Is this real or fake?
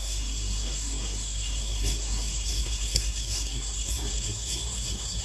fake